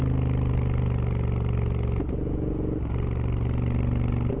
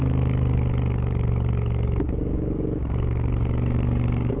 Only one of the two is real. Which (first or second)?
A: first